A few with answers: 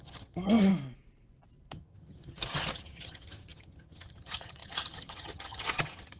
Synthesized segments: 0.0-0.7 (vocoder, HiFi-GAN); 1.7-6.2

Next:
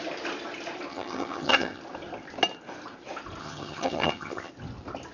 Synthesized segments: 0.9-1.8 (vocoder, HiFi-GAN); 3.4-4.5

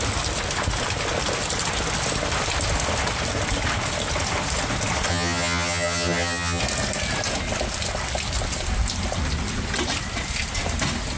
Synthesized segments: 5.1-6.6 (vocoder, HiFi-GAN)